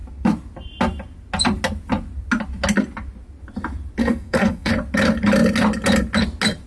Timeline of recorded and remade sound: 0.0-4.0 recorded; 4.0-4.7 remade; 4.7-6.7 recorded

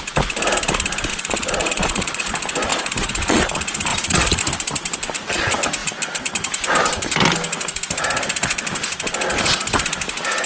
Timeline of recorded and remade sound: 0.0-1.1 recorded; 1.1-2.3 remade; 2.3-2.7 recorded; 2.7-3.4 remade; 3.4-3.9 recorded; 3.9-4.4 remade; 4.4-10.5 recorded

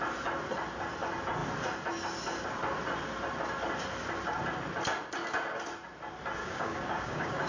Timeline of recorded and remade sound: 0.0-6.4 recorded; 6.4-7.5 remade